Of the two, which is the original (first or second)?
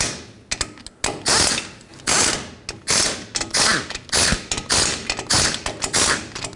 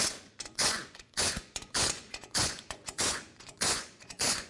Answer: first